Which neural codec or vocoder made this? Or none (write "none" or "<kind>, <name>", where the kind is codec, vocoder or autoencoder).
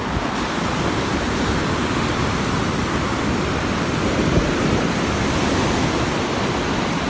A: none